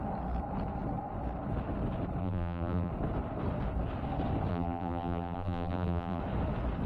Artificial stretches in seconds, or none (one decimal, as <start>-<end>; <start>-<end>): 2.2-2.9; 4.5-6.2

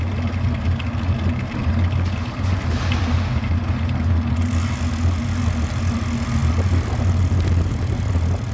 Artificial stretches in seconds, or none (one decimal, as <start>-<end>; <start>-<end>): none

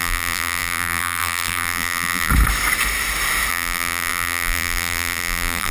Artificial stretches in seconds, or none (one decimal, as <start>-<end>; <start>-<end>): 0.0-2.3; 3.5-5.7

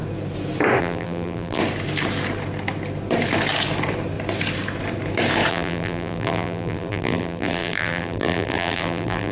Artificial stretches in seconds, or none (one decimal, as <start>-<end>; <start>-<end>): 0.8-1.6; 5.5-9.3

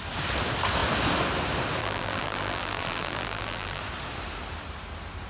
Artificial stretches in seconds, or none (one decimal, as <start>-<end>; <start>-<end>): 1.8-3.8

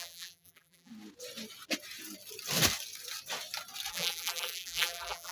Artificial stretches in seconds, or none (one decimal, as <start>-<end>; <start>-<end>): 0.0-0.9; 3.9-5.3

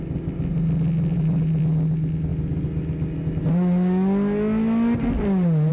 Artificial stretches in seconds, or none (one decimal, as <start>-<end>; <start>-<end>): 1.1-1.6